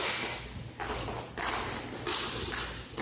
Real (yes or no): yes